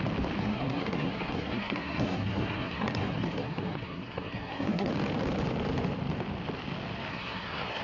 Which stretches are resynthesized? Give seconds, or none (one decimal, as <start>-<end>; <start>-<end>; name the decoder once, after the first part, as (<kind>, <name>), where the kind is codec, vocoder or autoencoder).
0.4-4.9 (codec, SNAC); 7.1-7.8